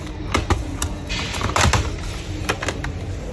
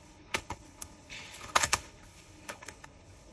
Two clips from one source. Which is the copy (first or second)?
second